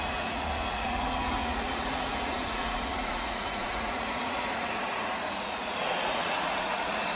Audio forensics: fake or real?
fake